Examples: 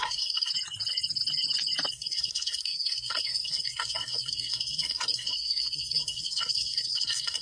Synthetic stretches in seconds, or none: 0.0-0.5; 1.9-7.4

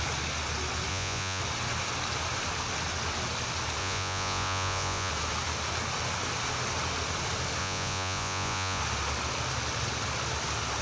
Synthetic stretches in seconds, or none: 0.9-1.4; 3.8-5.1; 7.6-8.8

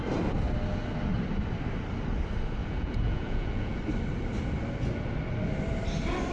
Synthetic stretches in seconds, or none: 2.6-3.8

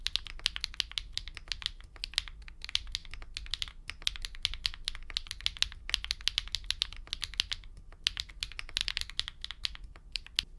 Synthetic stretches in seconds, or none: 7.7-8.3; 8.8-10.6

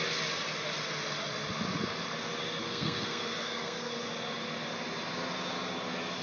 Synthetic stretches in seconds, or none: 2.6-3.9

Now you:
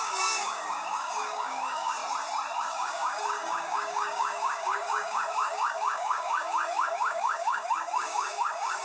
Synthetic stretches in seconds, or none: 0.0-2.0; 2.6-8.8